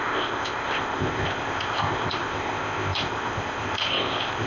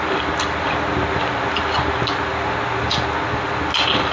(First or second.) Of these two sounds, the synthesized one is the first